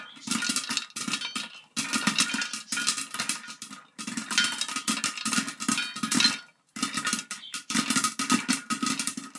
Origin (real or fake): real